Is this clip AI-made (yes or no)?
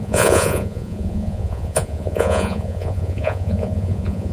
yes